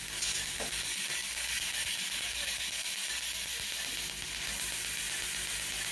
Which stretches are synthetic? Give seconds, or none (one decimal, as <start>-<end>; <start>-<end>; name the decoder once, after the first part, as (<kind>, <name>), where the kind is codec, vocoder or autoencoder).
0.0-3.5 (codec, DAC)

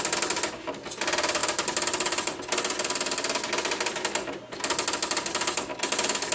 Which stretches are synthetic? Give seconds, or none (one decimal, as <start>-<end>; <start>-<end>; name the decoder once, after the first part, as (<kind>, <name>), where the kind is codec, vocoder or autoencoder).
none

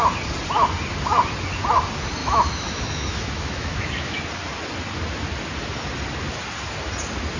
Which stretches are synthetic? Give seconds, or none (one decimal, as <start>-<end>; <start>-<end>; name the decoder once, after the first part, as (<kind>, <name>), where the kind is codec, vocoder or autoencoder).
2.2-4.2 (autoencoder, DAC-VAE)

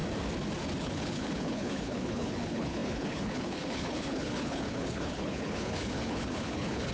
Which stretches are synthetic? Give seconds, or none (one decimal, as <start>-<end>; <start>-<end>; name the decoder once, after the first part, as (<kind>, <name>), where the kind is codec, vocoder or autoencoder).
0.8-6.9 (codec, HILCodec)

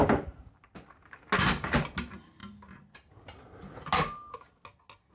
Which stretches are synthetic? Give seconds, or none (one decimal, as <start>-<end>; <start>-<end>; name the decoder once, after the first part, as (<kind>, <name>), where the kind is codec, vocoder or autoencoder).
none